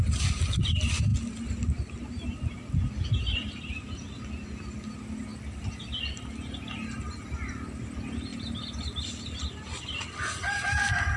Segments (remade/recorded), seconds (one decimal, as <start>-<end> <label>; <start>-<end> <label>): 0.0-0.6 remade; 0.6-5.3 recorded; 5.3-6.1 remade; 6.1-11.2 recorded